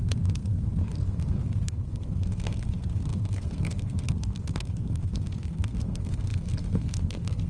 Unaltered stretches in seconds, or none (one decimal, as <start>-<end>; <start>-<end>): none